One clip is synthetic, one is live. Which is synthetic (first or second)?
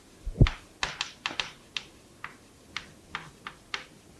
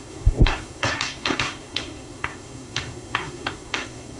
second